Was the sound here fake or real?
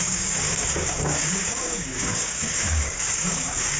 fake